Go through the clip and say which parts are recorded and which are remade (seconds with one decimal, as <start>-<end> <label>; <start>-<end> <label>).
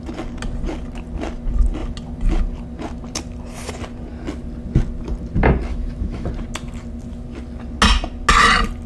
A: 0.0-5.7 recorded; 5.7-6.3 remade; 6.3-8.9 recorded